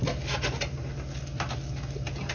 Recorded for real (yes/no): yes